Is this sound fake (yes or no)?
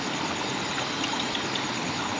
no